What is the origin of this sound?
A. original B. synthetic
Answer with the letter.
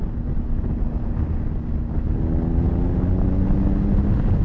A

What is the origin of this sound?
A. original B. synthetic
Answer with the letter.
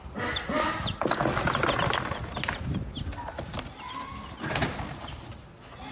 A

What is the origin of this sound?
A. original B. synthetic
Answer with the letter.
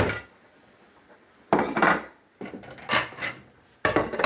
A